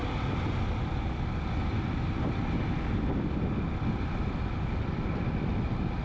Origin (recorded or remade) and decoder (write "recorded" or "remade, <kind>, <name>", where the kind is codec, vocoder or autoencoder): recorded